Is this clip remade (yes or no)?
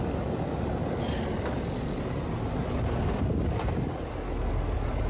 no